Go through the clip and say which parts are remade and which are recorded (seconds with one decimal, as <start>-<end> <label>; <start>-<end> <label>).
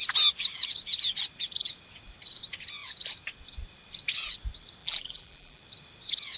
0.0-4.8 recorded; 4.8-5.6 remade; 5.6-6.4 recorded